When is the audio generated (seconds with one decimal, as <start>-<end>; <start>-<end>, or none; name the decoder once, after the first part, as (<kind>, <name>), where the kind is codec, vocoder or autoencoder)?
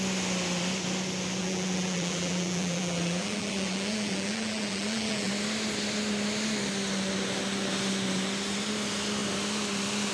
1.4-5.3 (vocoder, BigVGAN v2)